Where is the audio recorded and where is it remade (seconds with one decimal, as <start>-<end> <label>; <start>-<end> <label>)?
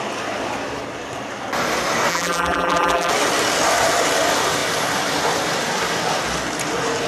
0.0-2.1 recorded; 2.1-3.1 remade; 3.1-7.1 recorded